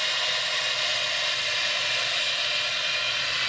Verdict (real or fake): real